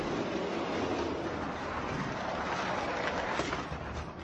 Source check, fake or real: real